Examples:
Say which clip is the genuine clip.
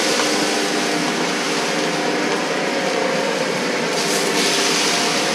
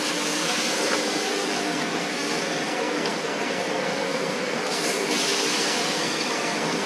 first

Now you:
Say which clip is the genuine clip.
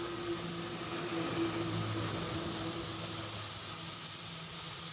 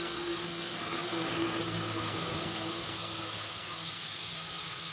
first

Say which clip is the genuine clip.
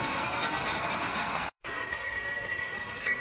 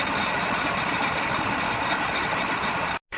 second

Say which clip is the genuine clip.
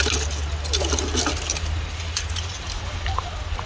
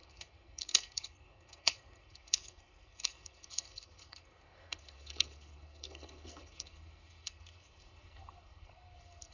first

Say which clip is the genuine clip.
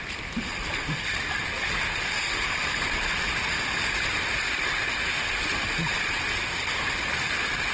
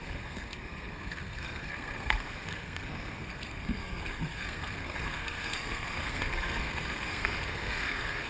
first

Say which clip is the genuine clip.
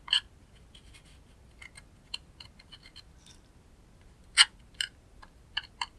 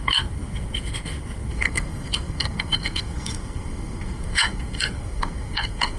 first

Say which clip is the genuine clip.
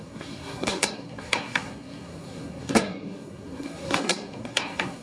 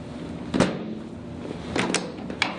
second